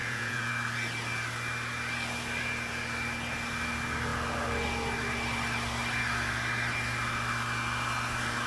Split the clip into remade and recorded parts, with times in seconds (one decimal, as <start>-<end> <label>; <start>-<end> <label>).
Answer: 0.0-0.5 remade; 0.5-8.5 recorded